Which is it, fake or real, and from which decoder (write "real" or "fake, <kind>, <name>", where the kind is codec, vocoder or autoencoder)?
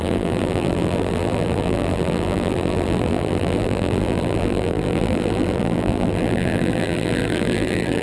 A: fake, vocoder, BigVGAN v2